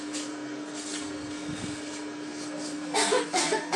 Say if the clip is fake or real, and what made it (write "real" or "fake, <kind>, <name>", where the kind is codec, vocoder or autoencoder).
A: fake, codec, SNAC